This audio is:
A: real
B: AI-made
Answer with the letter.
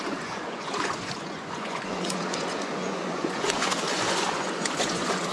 B